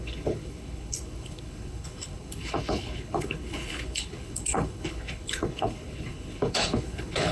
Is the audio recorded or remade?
remade